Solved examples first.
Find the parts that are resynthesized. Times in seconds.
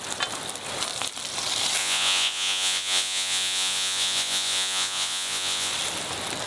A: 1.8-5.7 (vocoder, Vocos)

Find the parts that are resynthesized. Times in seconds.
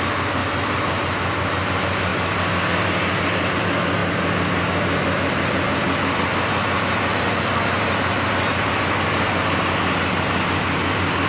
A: none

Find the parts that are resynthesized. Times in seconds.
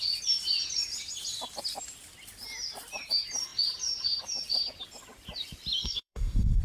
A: 5.8-6.6 (codec, SNAC)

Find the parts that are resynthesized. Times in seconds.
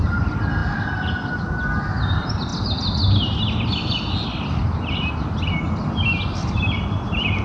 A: none